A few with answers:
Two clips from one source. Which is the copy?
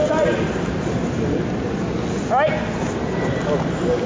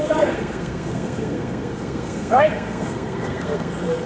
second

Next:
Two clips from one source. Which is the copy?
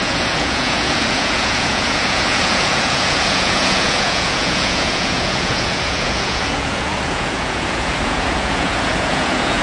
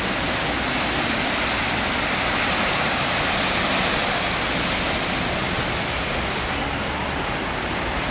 first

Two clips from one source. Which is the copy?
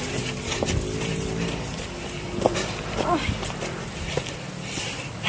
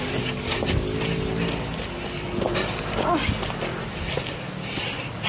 first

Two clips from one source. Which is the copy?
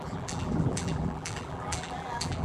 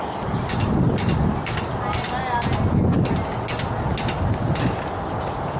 first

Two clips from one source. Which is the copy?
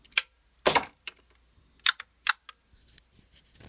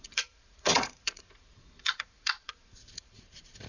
second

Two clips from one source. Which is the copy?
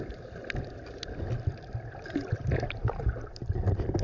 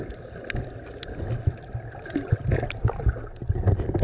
first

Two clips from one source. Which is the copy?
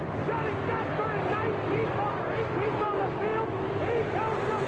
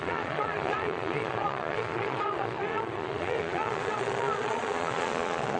second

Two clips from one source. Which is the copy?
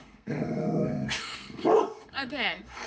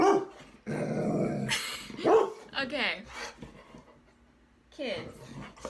first